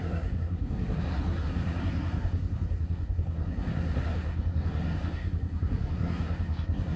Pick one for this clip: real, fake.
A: fake